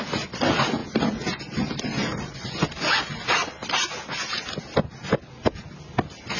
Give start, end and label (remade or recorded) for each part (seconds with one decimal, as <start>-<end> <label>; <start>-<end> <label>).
0.0-6.4 recorded